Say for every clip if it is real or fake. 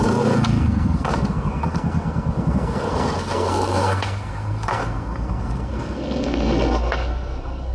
fake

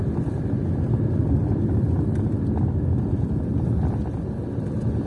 real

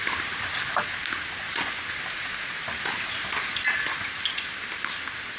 real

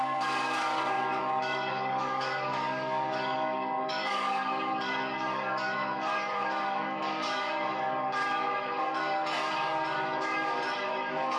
fake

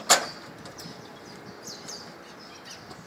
real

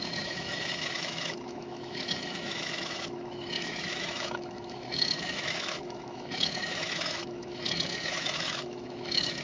fake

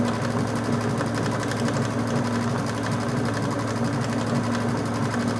real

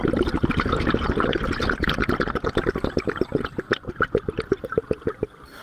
real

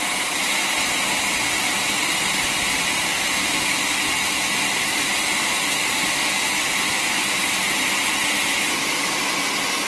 real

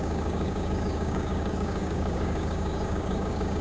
fake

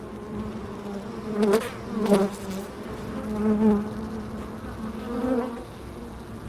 real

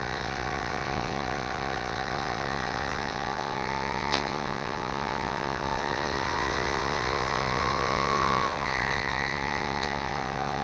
fake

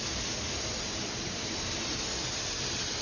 fake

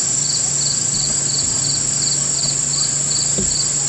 real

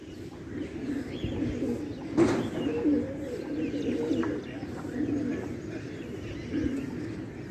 real